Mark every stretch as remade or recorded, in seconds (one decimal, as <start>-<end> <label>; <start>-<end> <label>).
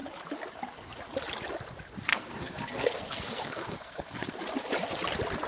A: 0.0-2.1 recorded; 2.1-4.4 remade; 4.4-5.5 recorded